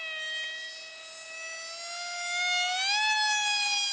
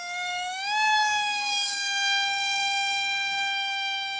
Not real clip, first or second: second